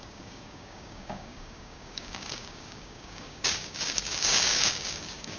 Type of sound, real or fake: fake